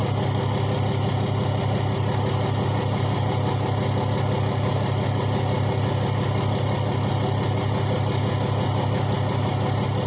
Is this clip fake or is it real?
real